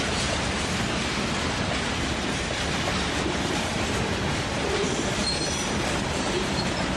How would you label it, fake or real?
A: fake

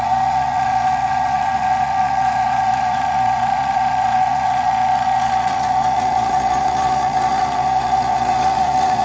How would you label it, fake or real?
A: fake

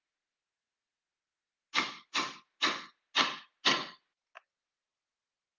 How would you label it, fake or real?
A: real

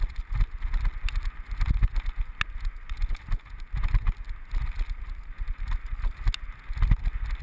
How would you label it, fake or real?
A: real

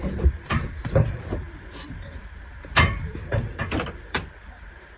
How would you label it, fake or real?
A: fake